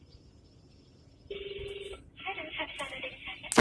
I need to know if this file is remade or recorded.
recorded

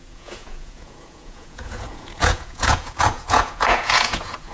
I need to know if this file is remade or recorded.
remade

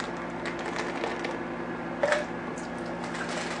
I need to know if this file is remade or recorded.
recorded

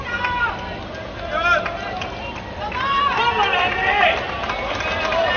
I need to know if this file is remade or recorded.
recorded